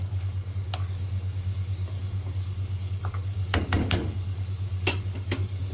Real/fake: fake